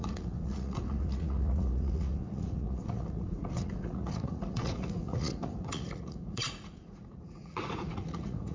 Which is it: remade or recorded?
remade